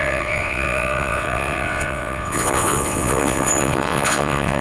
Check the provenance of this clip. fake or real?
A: fake